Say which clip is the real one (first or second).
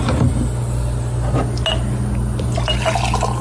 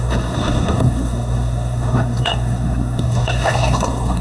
first